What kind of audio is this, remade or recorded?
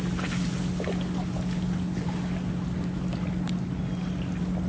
recorded